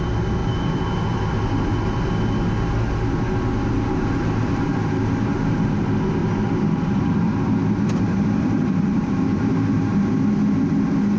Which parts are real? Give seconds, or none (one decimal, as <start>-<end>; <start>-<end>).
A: 0.0-0.4; 1.2-3.9; 5.8-6.2; 10.1-11.2